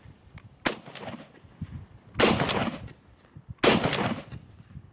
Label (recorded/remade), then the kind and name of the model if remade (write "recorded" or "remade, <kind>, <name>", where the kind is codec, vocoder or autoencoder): recorded